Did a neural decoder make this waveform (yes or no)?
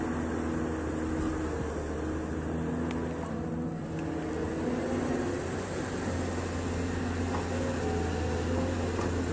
no